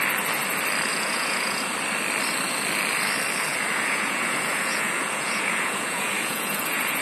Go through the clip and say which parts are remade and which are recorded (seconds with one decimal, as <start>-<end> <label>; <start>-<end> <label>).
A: 0.0-0.9 recorded; 0.9-1.6 remade; 1.6-3.5 recorded; 3.5-7.0 remade